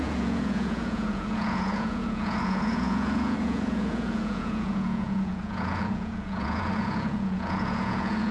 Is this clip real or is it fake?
fake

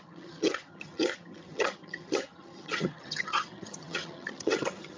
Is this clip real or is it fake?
fake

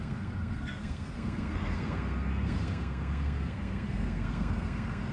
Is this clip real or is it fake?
fake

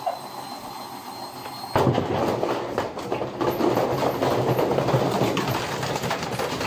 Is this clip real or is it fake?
real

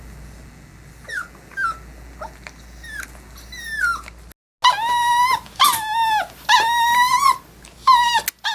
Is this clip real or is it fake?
real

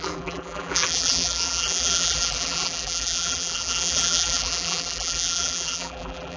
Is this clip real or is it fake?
fake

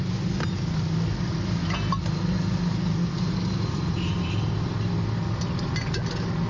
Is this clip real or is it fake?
real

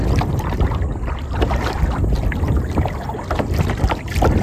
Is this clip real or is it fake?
fake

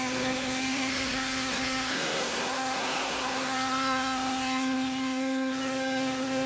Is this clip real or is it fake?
fake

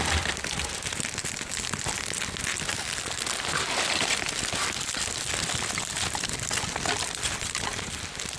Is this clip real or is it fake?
real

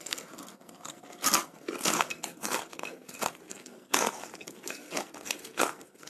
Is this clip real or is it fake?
fake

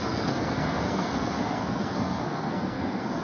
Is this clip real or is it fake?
fake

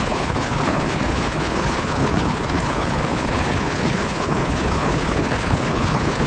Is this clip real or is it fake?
fake